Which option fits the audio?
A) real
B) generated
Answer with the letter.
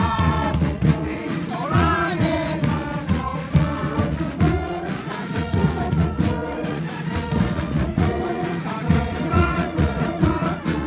B